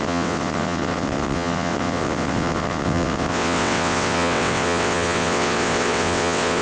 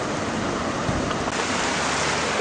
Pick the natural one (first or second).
second